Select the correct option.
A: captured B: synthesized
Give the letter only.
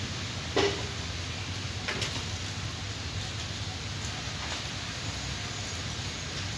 A